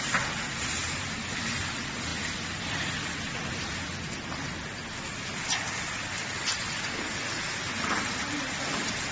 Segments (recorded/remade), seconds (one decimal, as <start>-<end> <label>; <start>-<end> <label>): 0.0-9.1 recorded